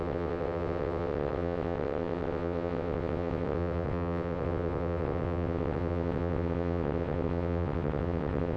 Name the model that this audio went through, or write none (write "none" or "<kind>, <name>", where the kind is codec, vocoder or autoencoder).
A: vocoder, WaveNeXt